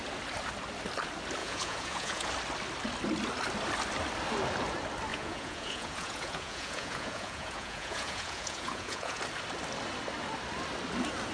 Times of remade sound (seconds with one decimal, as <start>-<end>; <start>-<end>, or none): 1.4-2.3; 5.1-9.2